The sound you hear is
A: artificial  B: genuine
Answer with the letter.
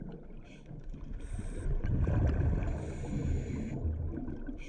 B